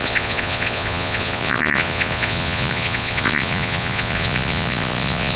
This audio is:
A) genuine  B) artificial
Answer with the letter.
B